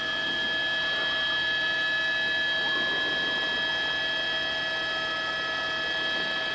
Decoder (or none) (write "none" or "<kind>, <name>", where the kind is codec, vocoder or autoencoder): none